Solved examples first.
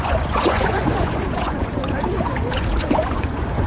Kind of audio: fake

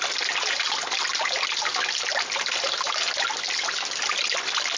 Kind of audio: real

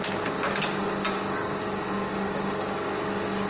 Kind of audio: real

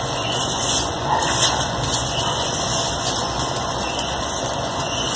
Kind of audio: fake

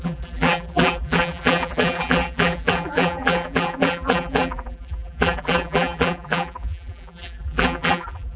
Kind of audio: fake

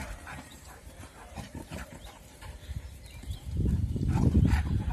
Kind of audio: fake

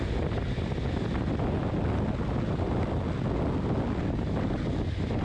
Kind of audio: real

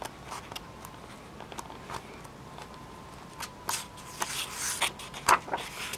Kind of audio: real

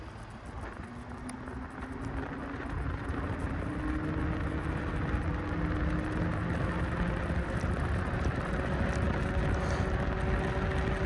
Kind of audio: real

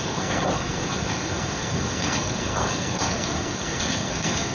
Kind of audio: fake